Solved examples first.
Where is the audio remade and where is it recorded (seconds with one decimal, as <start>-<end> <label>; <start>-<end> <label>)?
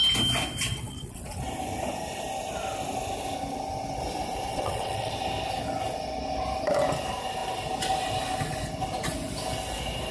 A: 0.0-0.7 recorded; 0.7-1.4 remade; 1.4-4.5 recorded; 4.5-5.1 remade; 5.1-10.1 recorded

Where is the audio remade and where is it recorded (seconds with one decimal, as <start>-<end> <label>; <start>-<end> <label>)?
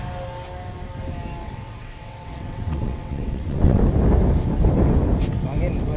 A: 0.0-1.4 recorded; 1.4-3.8 remade; 3.8-6.0 recorded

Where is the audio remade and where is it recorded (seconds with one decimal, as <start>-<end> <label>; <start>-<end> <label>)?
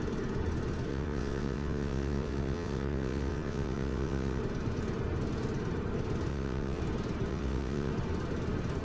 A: 0.0-0.9 recorded; 0.9-4.4 remade; 4.4-6.3 recorded; 6.3-6.8 remade; 6.8-7.3 recorded; 7.3-7.9 remade; 7.9-8.8 recorded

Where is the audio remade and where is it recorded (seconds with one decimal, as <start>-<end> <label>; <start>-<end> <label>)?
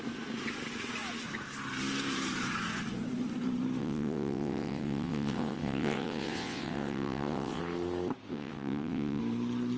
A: 0.0-3.8 recorded; 3.8-7.6 remade; 7.6-8.3 recorded; 8.3-9.2 remade; 9.2-9.8 recorded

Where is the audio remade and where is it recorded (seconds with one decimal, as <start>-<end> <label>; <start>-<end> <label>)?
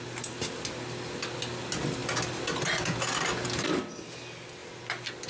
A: 0.0-5.3 recorded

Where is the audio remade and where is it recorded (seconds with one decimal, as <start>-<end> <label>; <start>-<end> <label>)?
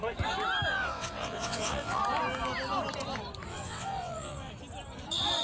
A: 0.0-0.7 recorded; 0.7-2.0 remade; 2.0-3.5 recorded; 3.5-4.5 remade; 4.5-5.4 recorded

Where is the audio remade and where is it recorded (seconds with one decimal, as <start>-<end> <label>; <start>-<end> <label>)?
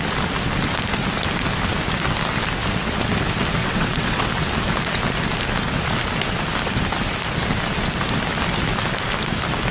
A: 0.0-3.6 recorded; 3.6-4.3 remade; 4.3-9.7 recorded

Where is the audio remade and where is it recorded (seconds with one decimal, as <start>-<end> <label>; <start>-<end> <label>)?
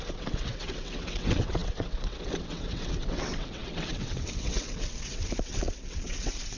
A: 0.0-6.6 remade